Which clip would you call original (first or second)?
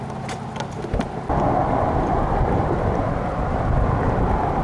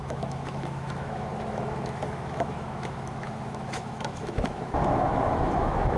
first